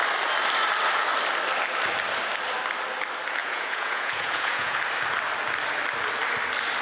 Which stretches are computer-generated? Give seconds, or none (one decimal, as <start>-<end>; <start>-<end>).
3.4-4.8